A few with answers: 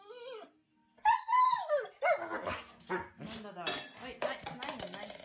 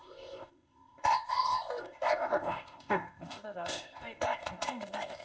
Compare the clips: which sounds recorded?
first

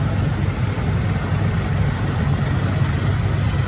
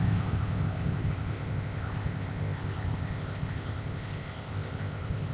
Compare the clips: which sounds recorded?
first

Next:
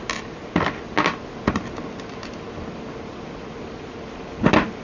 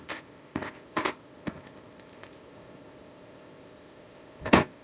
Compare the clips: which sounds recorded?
first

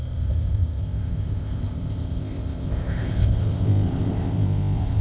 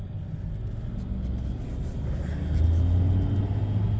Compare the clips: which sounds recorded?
second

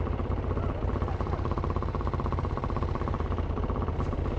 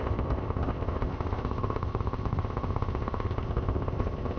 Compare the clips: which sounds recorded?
first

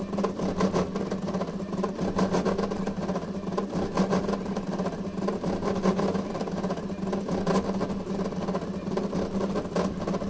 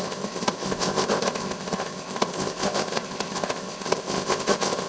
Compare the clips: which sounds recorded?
first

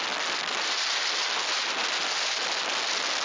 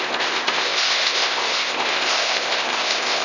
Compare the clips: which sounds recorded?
first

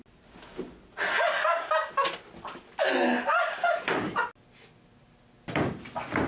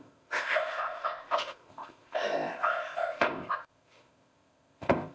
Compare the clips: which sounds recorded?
first